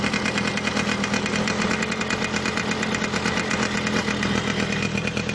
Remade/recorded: recorded